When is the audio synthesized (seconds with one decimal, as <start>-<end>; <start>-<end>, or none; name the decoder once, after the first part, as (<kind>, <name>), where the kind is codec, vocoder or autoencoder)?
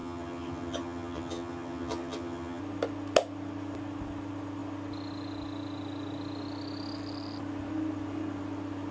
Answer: 0.0-2.6 (vocoder, HiFi-GAN)